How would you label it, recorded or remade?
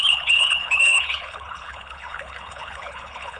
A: remade